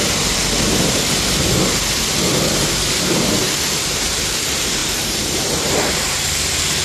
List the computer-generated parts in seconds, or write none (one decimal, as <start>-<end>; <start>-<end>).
0.0-0.4; 2.6-6.8